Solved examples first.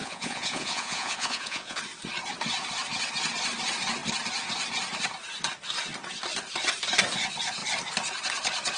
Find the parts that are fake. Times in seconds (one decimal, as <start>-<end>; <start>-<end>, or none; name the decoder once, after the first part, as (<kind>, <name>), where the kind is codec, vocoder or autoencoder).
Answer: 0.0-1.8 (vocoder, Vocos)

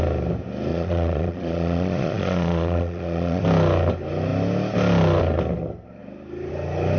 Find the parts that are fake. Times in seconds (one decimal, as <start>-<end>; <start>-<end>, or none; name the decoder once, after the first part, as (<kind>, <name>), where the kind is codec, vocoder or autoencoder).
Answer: 0.7-3.4 (vocoder, Vocos)

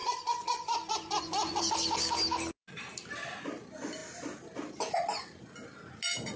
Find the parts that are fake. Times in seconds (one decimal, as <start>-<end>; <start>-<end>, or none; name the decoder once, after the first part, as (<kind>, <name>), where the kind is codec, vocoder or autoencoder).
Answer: 0.0-1.7 (vocoder, Vocos)